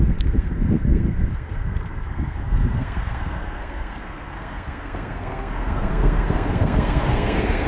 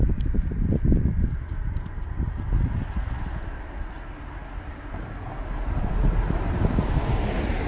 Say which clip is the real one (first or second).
second